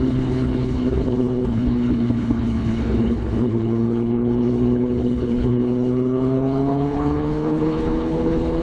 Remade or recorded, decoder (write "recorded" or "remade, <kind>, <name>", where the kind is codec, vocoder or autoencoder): remade, codec, HILCodec